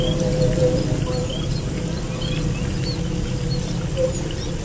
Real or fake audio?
real